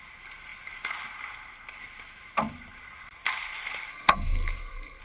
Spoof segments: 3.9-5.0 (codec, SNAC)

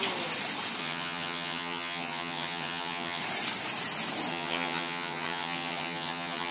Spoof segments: 0.8-3.2 (vocoder, HiFi-GAN); 4.3-6.5

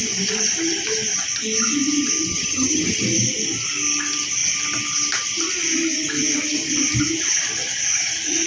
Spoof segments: 2.3-3.0 (vocoder, HiFi-GAN)

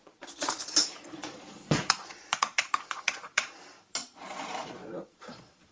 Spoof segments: 0.0-0.5 (vocoder, Vocos); 1.2-3.6; 4.0-5.7

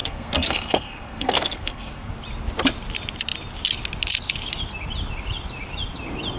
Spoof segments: 0.0-2.1 (codec, SNAC)

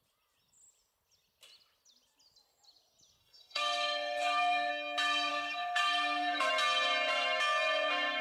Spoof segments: 3.2-4.7 (codec, SNAC); 5.3-6.5